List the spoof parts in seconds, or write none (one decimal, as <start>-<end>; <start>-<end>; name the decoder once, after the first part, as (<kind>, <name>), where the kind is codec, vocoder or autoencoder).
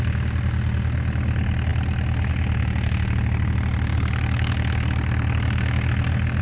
3.9-4.5 (codec, DAC)